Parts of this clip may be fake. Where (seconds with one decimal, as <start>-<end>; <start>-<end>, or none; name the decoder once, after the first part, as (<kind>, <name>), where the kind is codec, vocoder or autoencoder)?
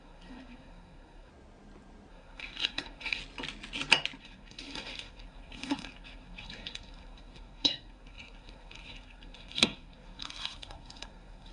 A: 0.0-1.3 (codec, SNAC); 2.1-3.2; 4.2-11.5